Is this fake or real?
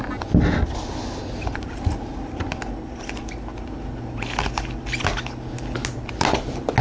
real